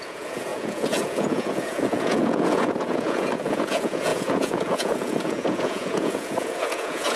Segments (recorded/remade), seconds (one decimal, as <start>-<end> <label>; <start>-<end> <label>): 0.0-7.2 remade